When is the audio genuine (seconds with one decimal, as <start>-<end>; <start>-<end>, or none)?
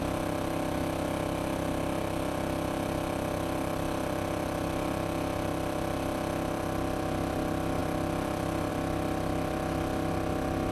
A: 0.0-10.7